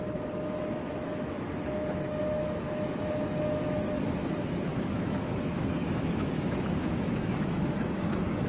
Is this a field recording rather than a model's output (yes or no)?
no